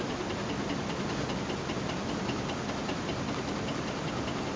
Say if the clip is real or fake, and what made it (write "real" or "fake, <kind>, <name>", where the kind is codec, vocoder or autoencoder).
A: real